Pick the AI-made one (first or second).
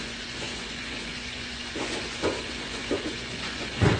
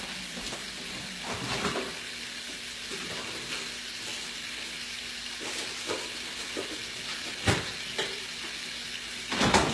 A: first